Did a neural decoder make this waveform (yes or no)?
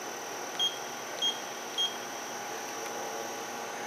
no